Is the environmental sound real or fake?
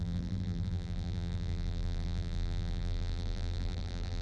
fake